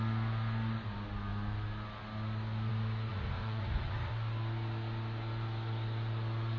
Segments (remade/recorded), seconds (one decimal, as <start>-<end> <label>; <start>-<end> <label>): 0.0-3.1 recorded; 3.1-4.1 remade; 4.1-6.6 recorded